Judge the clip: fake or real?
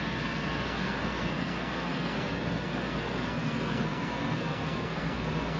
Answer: fake